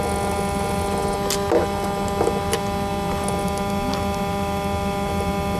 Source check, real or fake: real